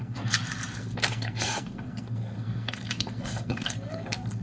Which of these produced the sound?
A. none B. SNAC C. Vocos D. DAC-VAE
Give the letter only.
B